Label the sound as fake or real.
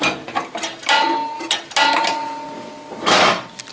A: real